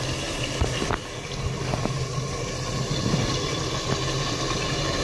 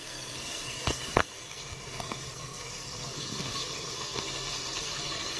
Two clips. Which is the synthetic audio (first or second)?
second